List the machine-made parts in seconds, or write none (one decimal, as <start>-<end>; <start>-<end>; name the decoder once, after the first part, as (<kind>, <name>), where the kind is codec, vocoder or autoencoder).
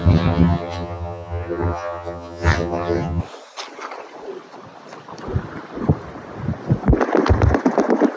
0.0-3.2 (vocoder, HiFi-GAN)